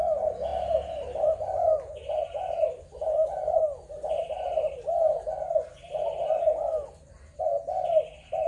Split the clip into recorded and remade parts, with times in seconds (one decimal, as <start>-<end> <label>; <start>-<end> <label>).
0.0-8.5 recorded

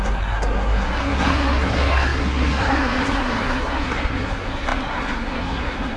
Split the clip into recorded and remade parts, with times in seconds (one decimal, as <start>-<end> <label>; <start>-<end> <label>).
0.0-6.0 remade

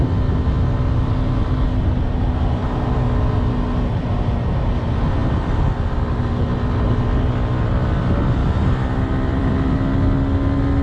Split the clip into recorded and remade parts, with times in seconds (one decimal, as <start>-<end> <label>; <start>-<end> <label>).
0.0-8.4 recorded; 8.4-9.7 remade; 9.7-10.8 recorded

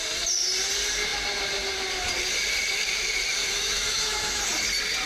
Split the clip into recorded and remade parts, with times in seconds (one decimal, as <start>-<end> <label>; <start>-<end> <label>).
0.0-3.4 recorded; 3.4-4.4 remade; 4.4-5.1 recorded

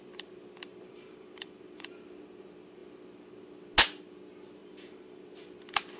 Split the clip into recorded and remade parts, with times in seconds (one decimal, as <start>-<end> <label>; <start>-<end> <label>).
0.0-0.7 recorded; 0.7-1.9 remade; 1.9-4.6 recorded; 4.6-5.2 remade; 5.2-6.0 recorded

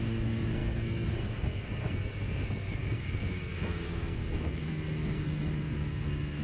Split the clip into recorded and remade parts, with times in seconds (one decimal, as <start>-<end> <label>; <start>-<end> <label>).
0.0-6.4 remade